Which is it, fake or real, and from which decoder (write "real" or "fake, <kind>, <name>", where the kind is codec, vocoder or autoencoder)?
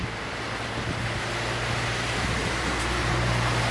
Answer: real